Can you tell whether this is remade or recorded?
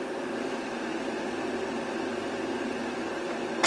recorded